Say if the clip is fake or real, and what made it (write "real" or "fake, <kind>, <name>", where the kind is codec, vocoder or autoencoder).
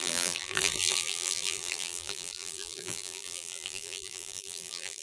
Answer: fake, vocoder, BigVGAN v2